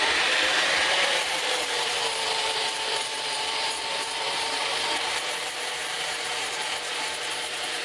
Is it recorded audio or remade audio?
remade